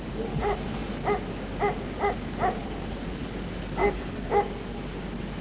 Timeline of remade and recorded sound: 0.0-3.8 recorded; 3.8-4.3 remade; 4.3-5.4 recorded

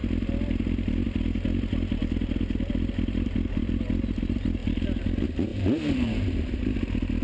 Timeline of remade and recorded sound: 0.0-5.5 recorded; 5.5-6.5 remade; 6.5-7.2 recorded

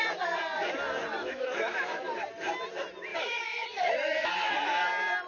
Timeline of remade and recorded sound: 0.0-1.2 recorded; 1.2-2.1 remade; 2.1-3.1 recorded; 3.1-4.5 remade; 4.5-5.3 recorded